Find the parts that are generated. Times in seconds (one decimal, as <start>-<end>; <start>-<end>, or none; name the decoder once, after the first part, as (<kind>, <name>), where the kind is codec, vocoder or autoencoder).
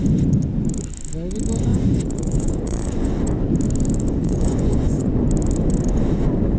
1.7-3.1 (vocoder, Vocos); 4.2-5.1